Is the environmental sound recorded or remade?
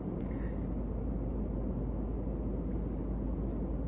recorded